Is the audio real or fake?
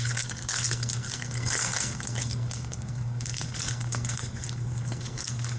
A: fake